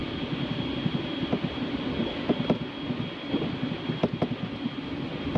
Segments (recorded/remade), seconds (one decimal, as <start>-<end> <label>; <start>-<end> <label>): 0.0-5.4 recorded